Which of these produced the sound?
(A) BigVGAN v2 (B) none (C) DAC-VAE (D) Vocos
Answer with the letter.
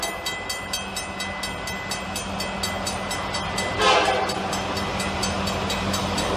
B